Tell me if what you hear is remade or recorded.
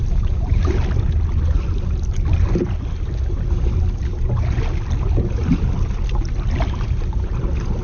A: recorded